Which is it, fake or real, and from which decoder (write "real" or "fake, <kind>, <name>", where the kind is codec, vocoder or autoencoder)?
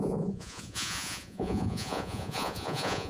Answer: fake, vocoder, Vocos